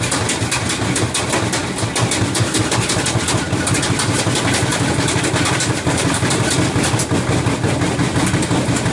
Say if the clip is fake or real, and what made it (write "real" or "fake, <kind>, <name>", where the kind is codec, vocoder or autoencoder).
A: real